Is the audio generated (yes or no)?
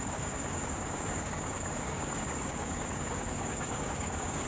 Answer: yes